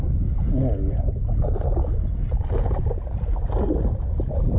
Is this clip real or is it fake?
real